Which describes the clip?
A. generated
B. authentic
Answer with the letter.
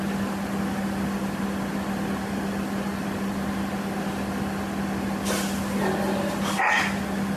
B